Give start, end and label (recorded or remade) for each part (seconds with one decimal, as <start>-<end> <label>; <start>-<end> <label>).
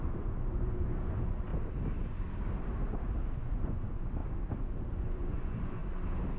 0.0-1.5 remade; 1.5-3.4 recorded; 3.4-4.2 remade; 4.2-4.9 recorded; 4.9-5.8 remade; 5.8-6.4 recorded